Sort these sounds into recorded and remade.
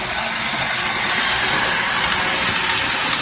recorded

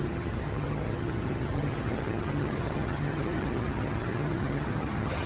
remade